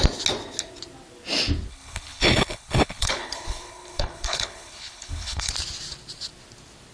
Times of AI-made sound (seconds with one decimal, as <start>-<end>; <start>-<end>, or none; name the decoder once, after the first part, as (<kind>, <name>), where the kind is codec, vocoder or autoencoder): 1.7-5.5 (codec, HILCodec)